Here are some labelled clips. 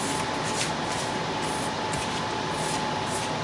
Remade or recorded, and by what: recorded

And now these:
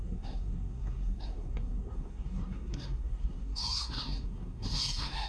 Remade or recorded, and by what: remade, codec, SNAC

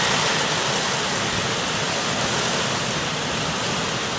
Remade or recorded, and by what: recorded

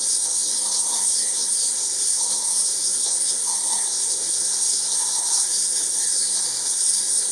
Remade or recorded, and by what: remade, codec, SNAC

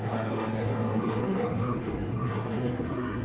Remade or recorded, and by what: remade, codec, SNAC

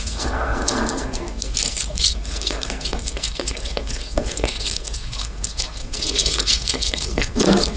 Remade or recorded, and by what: remade, codec, SNAC